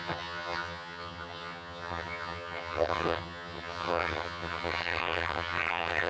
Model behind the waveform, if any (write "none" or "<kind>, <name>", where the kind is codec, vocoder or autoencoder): vocoder, HiFi-GAN